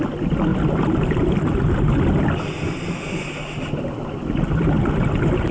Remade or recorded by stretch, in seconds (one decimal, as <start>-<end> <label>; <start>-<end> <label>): 0.0-5.5 recorded